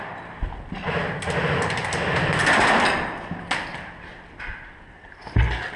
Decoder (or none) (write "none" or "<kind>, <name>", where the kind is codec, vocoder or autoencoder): none